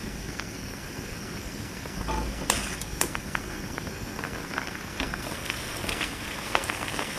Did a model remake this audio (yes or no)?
yes